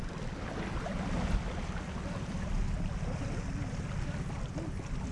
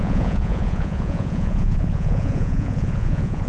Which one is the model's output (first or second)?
second